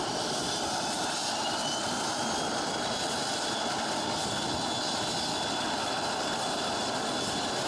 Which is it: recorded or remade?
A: recorded